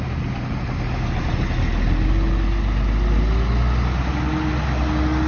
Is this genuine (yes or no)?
yes